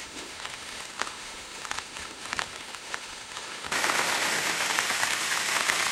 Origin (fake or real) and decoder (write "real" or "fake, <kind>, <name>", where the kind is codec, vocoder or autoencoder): fake, autoencoder, DAC-VAE